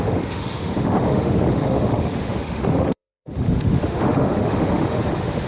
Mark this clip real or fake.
fake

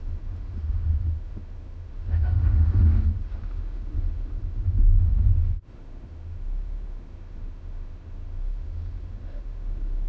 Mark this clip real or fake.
fake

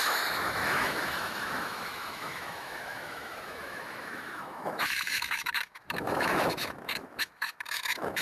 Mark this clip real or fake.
fake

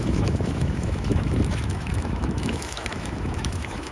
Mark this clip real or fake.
fake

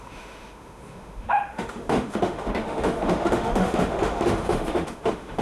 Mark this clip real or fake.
fake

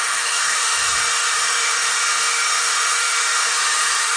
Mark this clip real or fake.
fake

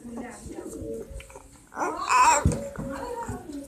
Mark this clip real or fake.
real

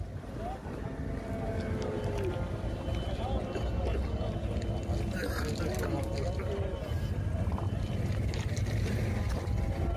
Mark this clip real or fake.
real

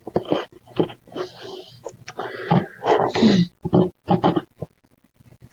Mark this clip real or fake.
real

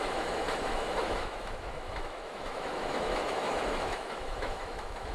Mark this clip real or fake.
fake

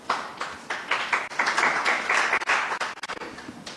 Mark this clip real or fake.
real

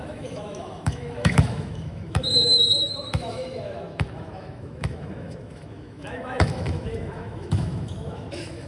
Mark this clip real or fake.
fake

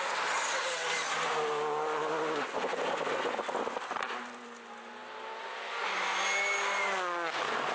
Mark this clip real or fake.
real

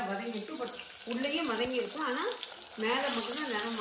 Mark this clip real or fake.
real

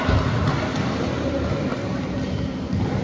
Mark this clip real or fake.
real